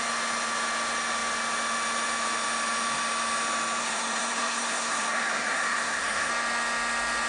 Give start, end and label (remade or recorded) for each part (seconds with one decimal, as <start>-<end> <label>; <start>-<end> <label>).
0.0-3.8 recorded; 3.8-6.3 remade; 6.3-7.3 recorded